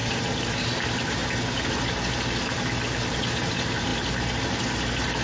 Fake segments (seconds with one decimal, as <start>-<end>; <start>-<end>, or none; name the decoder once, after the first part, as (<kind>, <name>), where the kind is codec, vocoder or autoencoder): none

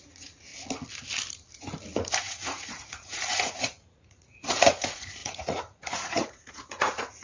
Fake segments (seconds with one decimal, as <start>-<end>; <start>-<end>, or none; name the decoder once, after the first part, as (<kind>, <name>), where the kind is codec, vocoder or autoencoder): 0.0-0.5 (vocoder, Vocos); 2.2-7.2

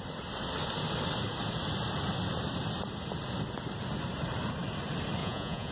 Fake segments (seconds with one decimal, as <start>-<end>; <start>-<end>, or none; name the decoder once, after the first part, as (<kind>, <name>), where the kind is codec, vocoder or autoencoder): 5.2-5.7 (vocoder, Vocos)

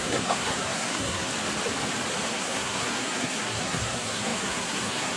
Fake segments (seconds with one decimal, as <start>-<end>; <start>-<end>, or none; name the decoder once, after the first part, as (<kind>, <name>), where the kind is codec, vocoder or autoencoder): 0.0-1.3 (codec, SNAC); 2.3-5.2